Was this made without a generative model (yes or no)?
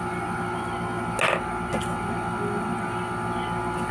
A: yes